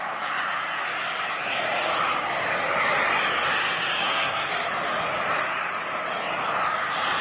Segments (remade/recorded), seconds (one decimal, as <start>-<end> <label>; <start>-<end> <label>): 0.0-4.0 recorded; 4.0-4.5 remade; 4.5-7.2 recorded